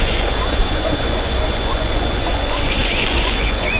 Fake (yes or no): yes